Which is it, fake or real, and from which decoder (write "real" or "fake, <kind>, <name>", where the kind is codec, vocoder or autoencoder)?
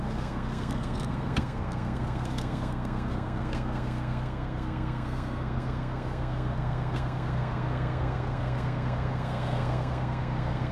fake, codec, SNAC